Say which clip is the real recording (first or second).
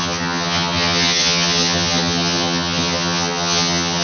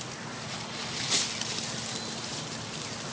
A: second